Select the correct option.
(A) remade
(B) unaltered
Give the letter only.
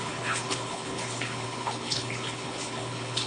A